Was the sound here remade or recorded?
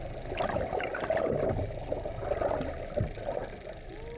recorded